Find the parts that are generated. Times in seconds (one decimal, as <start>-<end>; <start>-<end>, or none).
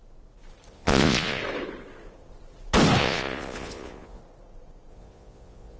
0.7-1.4; 3.0-4.2; 4.9-5.8